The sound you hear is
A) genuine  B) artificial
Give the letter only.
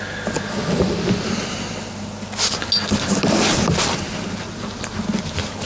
A